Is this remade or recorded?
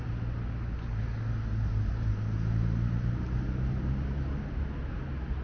recorded